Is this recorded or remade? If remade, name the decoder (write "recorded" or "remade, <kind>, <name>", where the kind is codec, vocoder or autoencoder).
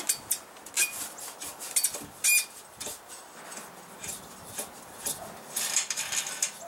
recorded